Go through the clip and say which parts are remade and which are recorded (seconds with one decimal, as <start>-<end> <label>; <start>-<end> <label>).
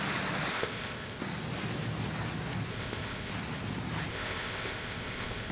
0.0-0.5 recorded; 0.5-1.2 remade; 1.2-2.7 recorded; 2.7-3.3 remade; 3.3-4.1 recorded; 4.1-5.5 remade